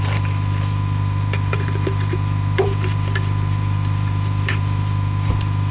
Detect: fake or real fake